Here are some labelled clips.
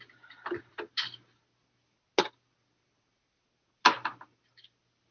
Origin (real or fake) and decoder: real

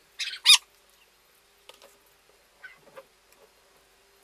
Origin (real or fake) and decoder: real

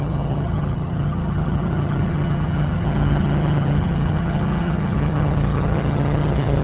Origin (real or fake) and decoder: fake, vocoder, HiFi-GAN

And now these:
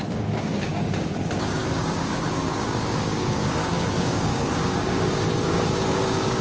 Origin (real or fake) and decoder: fake, codec, DAC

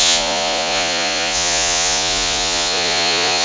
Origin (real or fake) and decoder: fake, vocoder, Vocos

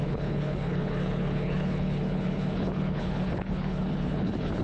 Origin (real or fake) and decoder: fake, codec, HILCodec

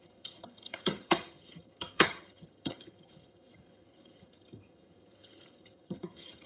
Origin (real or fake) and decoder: fake, vocoder, HiFi-GAN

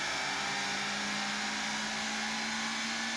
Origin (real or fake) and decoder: real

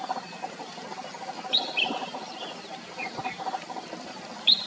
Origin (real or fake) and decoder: real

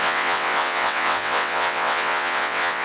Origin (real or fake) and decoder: fake, vocoder, WaveNeXt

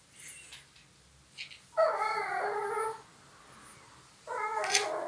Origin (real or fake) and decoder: real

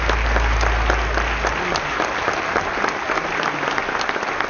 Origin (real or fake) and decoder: real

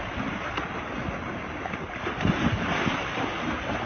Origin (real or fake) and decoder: real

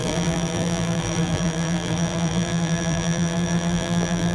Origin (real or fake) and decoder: fake, vocoder, BigVGAN v2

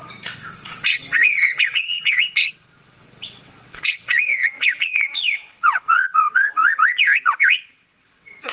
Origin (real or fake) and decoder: fake, vocoder, WaveNeXt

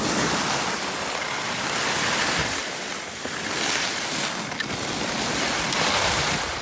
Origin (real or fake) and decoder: real